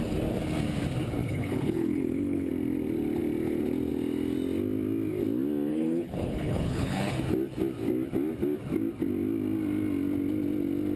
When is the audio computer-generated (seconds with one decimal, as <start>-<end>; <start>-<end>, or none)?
1.2-2.5; 5.7-7.1